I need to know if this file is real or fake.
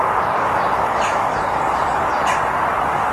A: fake